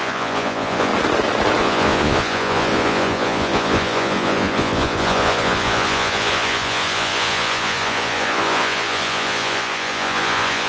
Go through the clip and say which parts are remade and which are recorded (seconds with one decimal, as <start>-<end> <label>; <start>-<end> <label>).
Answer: 0.0-0.9 remade; 0.9-1.6 recorded; 1.6-10.7 remade